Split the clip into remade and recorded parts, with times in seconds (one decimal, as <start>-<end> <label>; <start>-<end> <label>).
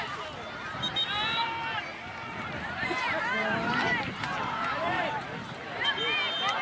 0.0-2.0 recorded; 2.0-6.0 remade; 6.0-6.6 recorded